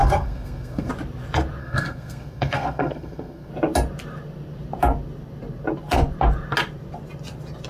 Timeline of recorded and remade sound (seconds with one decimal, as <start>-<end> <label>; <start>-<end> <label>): 0.0-0.9 remade; 0.9-1.6 recorded; 1.6-3.5 remade; 3.5-7.7 recorded